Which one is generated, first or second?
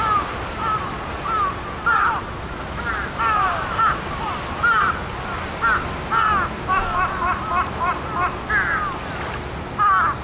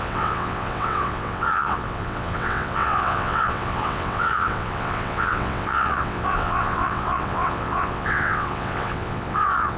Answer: second